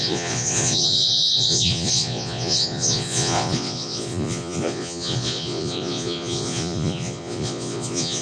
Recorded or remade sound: remade